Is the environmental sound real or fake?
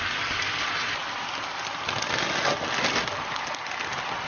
real